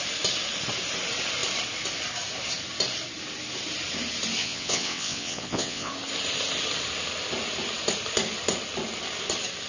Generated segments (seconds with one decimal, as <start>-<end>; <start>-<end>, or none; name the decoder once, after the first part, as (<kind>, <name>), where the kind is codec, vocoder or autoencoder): 4.4-5.9 (vocoder, WaveNeXt)